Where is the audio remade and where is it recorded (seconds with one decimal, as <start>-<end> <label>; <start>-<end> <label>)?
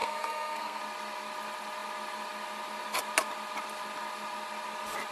0.0-0.8 remade; 0.8-5.1 recorded